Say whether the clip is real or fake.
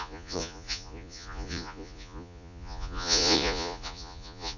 fake